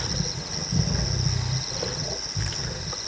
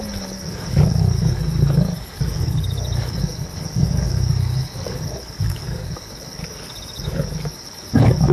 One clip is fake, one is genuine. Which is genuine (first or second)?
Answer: first